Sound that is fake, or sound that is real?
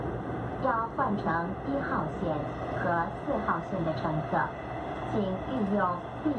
real